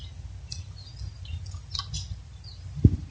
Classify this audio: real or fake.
real